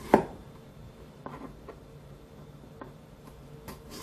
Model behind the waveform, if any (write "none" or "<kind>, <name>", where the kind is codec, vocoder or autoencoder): vocoder, BigVGAN v2